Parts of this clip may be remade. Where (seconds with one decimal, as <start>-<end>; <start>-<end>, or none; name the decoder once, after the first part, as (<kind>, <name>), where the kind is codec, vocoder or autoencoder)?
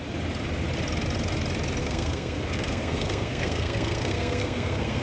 1.8-5.0 (codec, SNAC)